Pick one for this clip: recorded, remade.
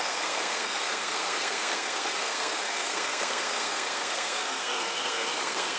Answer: remade